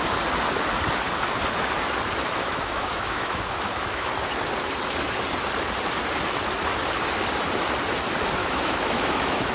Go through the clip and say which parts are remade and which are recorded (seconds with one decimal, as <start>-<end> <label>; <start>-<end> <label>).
0.0-2.4 recorded; 2.4-4.1 remade; 4.1-8.4 recorded; 8.4-9.5 remade